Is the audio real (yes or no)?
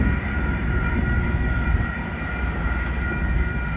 no